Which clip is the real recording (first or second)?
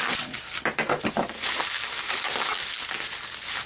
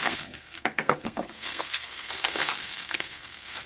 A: first